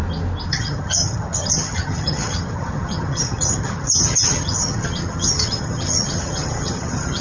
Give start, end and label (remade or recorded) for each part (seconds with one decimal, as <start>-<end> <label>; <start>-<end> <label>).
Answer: 0.0-0.5 recorded; 0.5-7.2 remade